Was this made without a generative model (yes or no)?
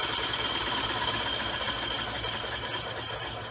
yes